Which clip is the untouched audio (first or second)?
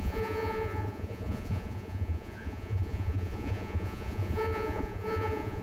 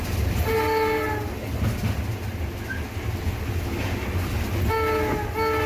second